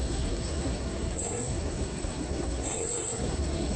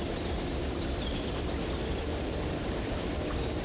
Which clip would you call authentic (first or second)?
second